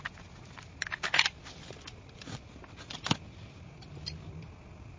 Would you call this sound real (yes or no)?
yes